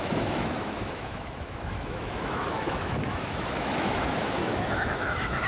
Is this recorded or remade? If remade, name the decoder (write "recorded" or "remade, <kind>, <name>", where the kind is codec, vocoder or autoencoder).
remade, autoencoder, DAC-VAE